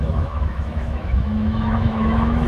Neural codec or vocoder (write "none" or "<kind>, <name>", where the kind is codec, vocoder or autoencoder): autoencoder, DAC-VAE